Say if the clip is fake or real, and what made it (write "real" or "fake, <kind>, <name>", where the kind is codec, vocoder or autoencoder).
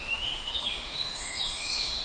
fake, autoencoder, DAC-VAE